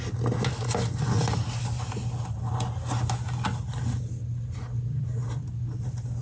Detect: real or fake real